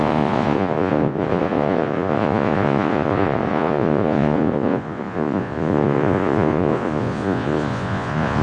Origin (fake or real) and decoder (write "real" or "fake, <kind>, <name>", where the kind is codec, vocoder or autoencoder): fake, vocoder, Vocos